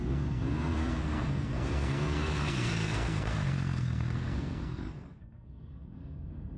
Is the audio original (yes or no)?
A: no